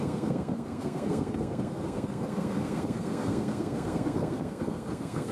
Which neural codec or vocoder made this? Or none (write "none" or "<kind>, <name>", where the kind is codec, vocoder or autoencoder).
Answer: codec, SNAC